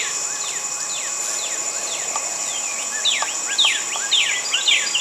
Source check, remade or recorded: recorded